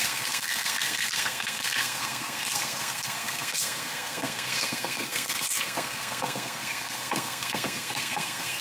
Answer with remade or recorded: remade